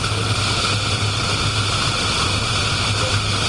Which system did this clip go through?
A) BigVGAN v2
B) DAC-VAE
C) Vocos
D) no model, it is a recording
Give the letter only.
D